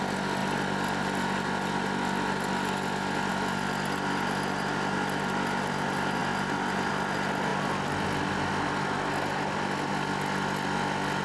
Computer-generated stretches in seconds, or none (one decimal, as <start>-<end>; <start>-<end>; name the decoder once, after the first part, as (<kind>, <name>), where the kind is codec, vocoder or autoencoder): none